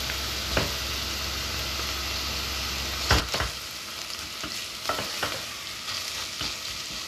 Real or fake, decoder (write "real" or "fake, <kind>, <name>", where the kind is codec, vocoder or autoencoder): real